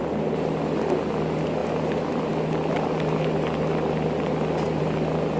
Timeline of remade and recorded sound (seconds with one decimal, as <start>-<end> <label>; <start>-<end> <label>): 0.0-5.4 recorded